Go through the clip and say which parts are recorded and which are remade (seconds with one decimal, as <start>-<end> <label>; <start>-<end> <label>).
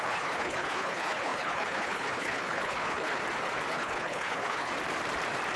0.0-3.2 remade; 3.2-3.7 recorded; 3.7-4.7 remade; 4.7-5.6 recorded